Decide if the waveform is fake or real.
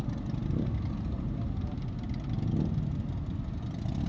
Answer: real